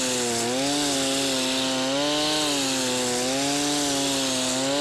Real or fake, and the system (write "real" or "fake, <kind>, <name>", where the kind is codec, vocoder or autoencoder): real